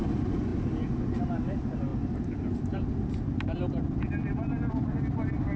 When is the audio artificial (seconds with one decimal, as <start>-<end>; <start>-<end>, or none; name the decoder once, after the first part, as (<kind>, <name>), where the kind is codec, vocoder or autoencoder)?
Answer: none